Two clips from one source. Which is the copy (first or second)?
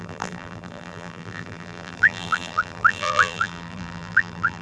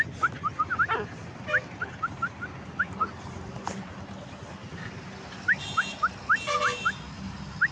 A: first